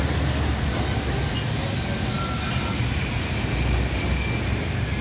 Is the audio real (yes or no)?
yes